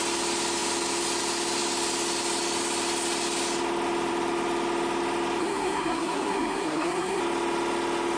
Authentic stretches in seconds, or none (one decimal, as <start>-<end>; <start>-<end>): 0.0-5.4; 7.2-8.2